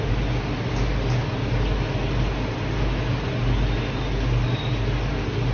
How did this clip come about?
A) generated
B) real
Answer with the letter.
B